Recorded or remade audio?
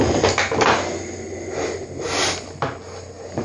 recorded